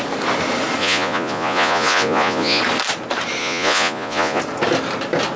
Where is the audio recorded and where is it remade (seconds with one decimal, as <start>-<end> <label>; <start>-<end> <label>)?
0.0-0.8 recorded; 0.8-2.6 remade; 2.6-3.4 recorded; 3.4-4.4 remade; 4.4-5.4 recorded